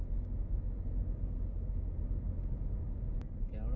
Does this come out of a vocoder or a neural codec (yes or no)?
no